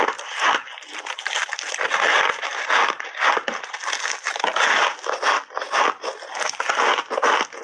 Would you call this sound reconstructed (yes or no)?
no